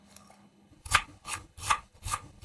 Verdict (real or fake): fake